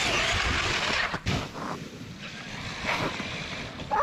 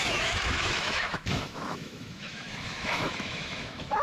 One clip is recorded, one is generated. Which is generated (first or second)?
second